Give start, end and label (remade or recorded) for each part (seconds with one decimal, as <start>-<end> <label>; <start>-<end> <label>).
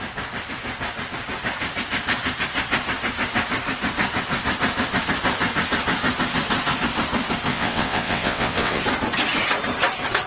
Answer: 0.0-7.5 recorded; 7.5-8.8 remade; 8.8-10.3 recorded